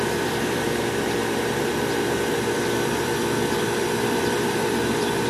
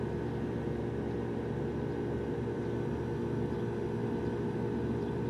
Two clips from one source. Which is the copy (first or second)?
first